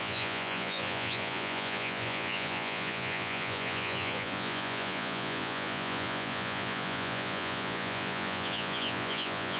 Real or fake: fake